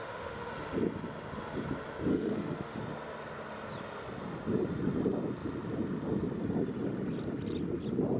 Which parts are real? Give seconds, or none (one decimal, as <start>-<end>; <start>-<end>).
0.5-2.1; 2.8-8.2